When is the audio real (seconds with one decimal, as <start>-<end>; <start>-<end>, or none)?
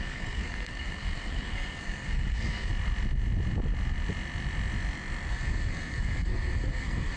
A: 2.7-5.3